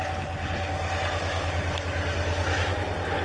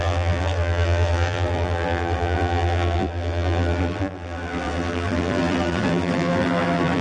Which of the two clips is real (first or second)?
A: first